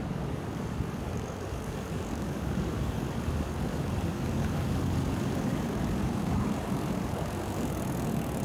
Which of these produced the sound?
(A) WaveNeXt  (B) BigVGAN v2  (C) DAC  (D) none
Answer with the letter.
C